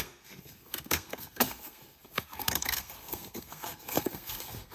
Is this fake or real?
fake